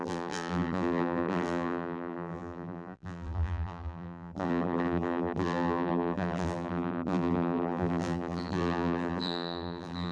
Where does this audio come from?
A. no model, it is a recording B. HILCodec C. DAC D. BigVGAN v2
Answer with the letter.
D